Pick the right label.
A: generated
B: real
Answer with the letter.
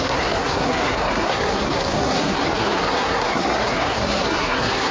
A